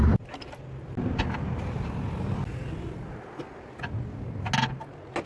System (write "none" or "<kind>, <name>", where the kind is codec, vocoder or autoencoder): none